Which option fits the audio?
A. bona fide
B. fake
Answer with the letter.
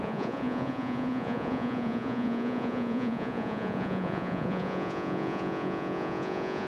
B